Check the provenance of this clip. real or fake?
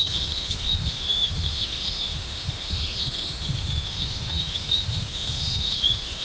fake